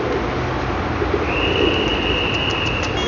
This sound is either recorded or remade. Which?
recorded